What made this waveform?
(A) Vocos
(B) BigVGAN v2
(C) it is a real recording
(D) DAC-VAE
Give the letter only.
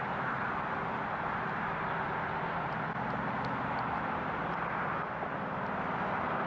C